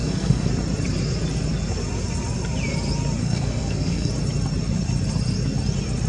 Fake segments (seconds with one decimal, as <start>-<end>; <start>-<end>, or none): 0.0-0.5; 3.2-4.1